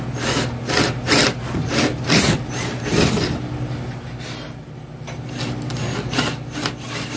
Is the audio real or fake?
real